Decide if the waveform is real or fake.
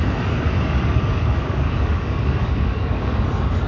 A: fake